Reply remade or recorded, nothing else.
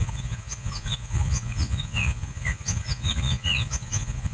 remade